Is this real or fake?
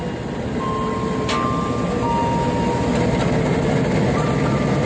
real